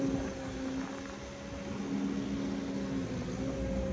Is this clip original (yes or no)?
yes